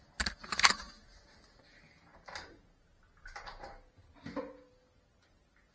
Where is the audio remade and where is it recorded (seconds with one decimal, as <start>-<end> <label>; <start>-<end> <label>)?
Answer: 0.0-5.7 recorded